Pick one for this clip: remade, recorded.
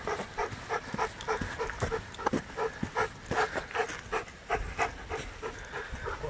recorded